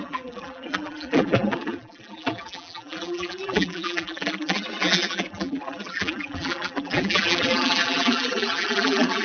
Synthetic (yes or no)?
yes